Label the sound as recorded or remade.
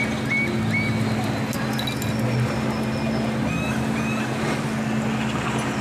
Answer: recorded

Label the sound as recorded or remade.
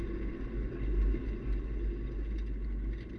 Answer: recorded